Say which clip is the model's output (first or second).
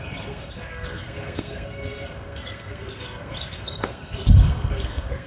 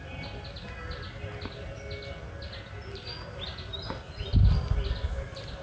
first